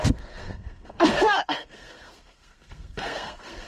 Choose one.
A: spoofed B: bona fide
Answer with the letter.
A